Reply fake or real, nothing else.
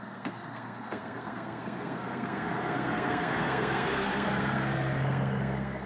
fake